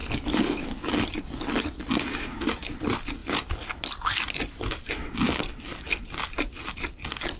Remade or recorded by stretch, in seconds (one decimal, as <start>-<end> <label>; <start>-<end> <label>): 0.0-1.6 remade; 1.6-7.4 recorded

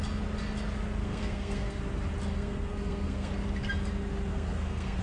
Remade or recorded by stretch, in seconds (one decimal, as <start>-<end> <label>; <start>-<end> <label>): 0.0-1.0 recorded; 1.0-1.8 remade; 1.8-2.3 recorded; 2.3-3.3 remade; 3.3-4.3 recorded; 4.3-5.0 remade

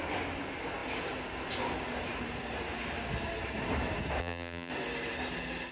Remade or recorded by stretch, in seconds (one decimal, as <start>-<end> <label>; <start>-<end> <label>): 0.0-4.2 recorded; 4.2-4.7 remade; 4.7-5.7 recorded

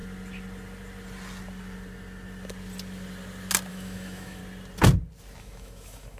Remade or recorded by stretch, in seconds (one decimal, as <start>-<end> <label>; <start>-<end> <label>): 0.0-3.7 recorded; 3.7-4.4 remade; 4.4-5.4 recorded; 5.4-6.2 remade